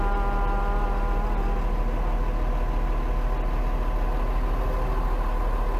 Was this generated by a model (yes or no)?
no